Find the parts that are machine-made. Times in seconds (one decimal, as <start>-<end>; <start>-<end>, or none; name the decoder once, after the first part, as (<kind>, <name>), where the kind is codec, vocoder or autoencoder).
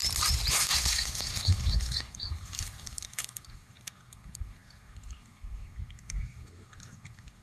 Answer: 0.5-7.4 (codec, SNAC)